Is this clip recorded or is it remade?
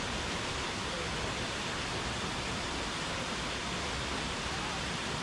recorded